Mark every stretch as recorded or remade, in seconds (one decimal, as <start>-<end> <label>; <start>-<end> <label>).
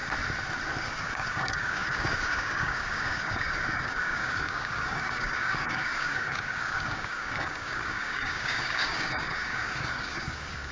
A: 0.0-0.8 recorded; 0.8-10.7 remade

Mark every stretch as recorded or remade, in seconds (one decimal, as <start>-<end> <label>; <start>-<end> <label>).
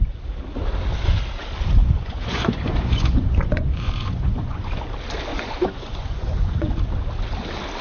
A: 0.0-1.8 recorded; 1.8-4.7 remade; 4.7-5.3 recorded; 5.3-6.9 remade; 6.9-7.8 recorded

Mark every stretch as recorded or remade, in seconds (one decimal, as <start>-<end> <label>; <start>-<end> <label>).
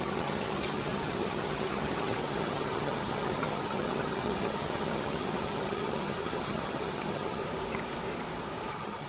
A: 0.0-7.4 remade; 7.4-8.7 recorded; 8.7-9.1 remade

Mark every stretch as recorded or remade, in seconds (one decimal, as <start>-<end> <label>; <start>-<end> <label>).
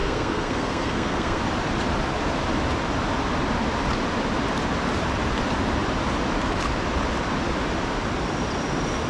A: 0.0-1.4 remade; 1.4-9.1 recorded